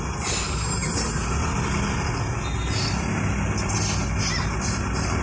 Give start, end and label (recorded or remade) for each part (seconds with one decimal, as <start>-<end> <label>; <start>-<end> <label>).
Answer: 0.0-5.2 recorded